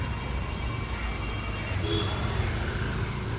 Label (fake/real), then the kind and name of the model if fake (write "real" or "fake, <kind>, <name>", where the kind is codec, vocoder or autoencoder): real